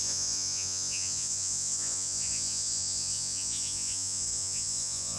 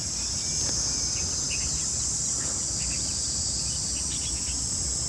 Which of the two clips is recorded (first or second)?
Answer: second